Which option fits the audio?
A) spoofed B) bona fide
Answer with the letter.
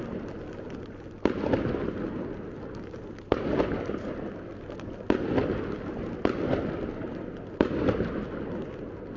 B